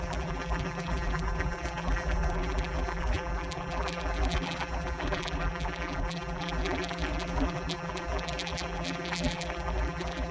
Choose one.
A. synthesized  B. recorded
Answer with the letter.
A